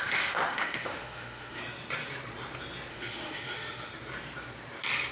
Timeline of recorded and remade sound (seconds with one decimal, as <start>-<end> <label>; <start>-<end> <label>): 0.0-1.6 remade; 1.6-2.9 recorded; 2.9-3.9 remade; 3.9-5.1 recorded